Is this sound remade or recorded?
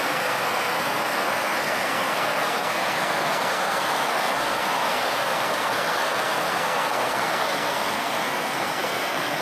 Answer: remade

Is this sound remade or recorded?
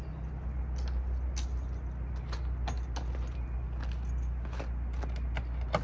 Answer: recorded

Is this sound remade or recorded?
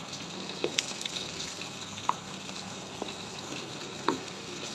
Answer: remade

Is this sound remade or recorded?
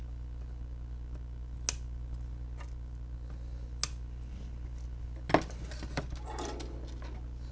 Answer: recorded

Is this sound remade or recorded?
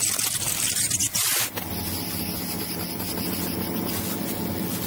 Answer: recorded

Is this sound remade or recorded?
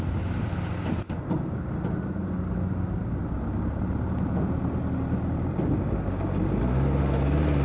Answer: recorded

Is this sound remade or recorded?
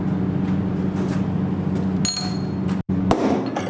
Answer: recorded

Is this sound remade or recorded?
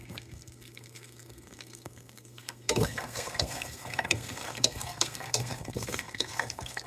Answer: remade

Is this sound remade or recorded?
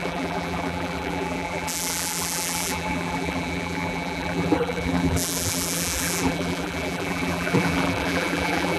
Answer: remade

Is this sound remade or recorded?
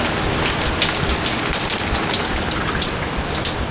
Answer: recorded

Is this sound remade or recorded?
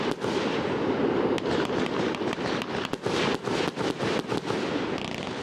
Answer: recorded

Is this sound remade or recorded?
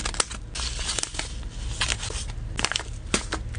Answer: recorded